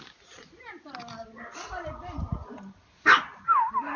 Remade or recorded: recorded